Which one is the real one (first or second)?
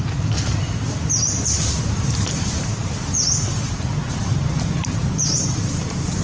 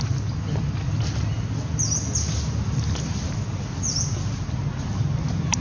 second